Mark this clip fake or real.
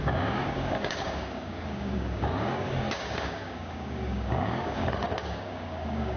fake